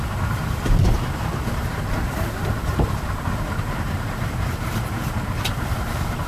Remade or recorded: remade